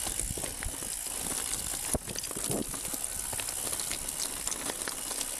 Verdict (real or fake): real